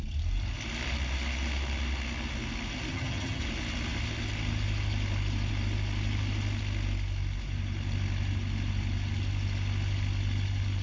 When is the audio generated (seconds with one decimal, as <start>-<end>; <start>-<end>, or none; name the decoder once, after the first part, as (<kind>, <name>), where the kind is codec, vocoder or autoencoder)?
2.9-3.4 (vocoder, HiFi-GAN)